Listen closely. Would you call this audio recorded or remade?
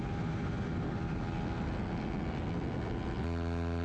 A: recorded